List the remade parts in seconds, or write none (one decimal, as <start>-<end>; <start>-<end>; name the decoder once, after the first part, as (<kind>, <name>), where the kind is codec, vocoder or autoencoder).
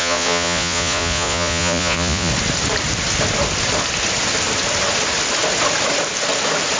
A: 0.0-2.3 (vocoder, Vocos)